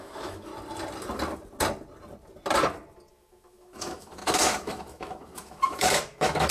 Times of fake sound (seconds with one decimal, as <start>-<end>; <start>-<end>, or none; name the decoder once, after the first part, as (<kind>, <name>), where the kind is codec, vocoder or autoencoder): 0.0-0.5 (autoencoder, DAC-VAE); 3.1-6.5